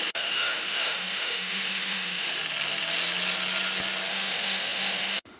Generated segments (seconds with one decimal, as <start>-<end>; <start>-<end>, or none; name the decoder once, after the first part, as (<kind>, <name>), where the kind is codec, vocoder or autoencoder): 0.0-2.4 (autoencoder, DAC-VAE); 4.1-5.4